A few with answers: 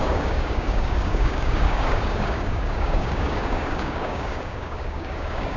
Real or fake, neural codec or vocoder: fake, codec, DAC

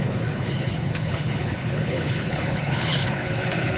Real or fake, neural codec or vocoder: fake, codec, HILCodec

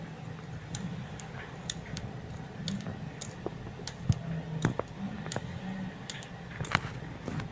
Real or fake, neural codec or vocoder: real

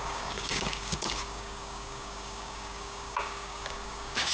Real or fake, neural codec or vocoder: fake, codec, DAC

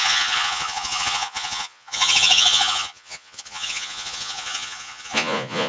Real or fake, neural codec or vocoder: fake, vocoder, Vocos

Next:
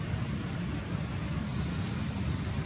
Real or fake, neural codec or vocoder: real